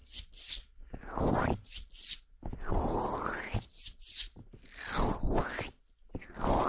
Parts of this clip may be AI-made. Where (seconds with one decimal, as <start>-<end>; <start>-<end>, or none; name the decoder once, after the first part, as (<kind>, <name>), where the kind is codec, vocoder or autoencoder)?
none